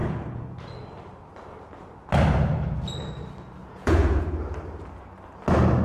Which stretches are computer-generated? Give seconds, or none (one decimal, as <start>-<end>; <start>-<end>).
0.0-0.7; 3.6-4.2